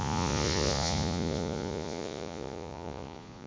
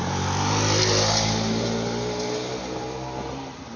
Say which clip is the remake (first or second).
first